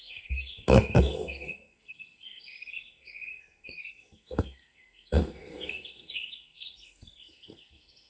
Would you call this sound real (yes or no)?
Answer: no